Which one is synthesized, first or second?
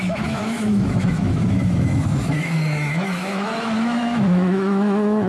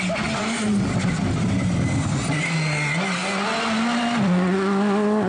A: first